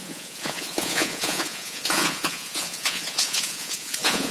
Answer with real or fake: fake